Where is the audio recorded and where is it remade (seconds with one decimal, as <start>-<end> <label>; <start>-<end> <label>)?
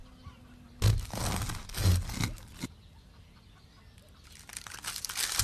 0.0-5.4 recorded